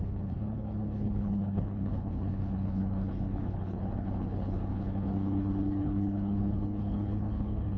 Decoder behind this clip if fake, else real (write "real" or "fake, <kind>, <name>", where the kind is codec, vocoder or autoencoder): fake, codec, HILCodec